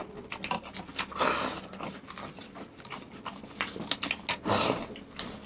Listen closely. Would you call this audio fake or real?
real